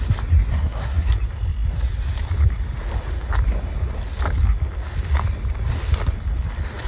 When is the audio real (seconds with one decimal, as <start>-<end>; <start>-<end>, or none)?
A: 0.0-0.5; 1.1-6.9